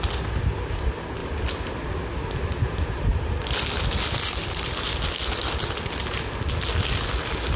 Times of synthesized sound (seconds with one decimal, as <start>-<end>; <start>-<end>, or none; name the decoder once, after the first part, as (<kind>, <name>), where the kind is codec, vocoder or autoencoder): none